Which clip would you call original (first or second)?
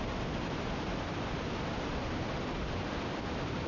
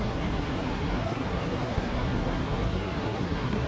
first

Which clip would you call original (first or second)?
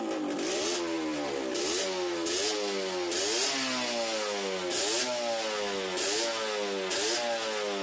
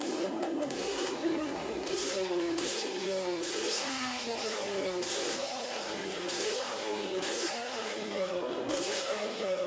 first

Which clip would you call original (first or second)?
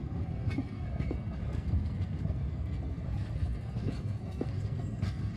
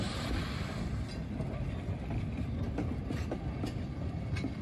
second